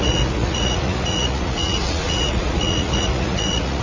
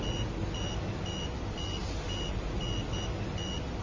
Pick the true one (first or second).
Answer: second